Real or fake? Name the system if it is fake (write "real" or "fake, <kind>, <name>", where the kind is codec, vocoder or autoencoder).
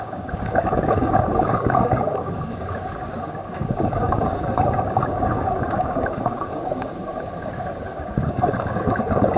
fake, codec, DAC